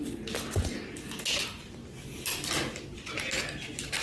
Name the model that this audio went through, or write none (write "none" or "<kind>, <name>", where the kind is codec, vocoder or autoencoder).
none